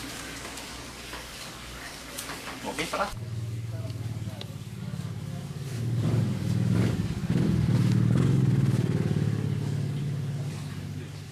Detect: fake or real fake